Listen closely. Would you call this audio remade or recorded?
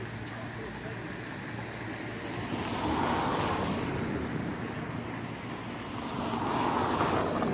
recorded